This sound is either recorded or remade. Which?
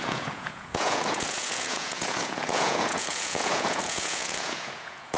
remade